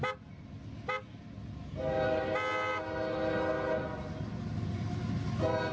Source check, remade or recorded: recorded